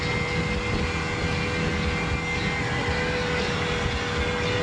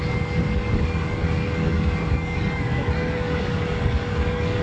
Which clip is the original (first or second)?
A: first